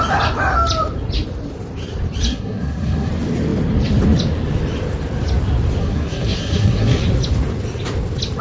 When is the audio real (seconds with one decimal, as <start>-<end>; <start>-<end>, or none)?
0.0-2.3; 3.1-5.8; 7.0-8.4